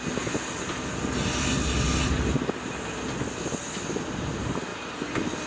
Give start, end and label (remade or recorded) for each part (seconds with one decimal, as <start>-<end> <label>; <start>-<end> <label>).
0.0-5.5 recorded